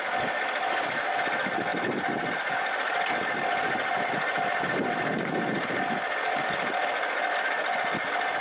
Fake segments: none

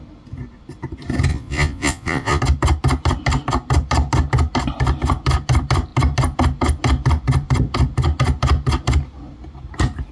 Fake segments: 1.3-2.4 (vocoder, Vocos)

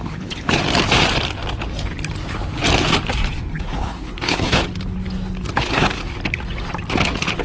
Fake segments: 0.0-0.6 (codec, HILCodec); 3.5-4.6; 5.6-6.0

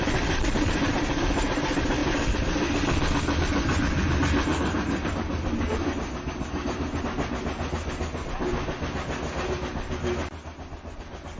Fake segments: none

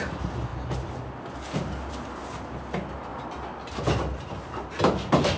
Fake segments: none